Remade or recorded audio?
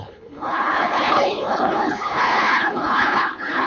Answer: remade